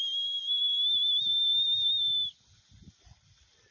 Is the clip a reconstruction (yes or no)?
no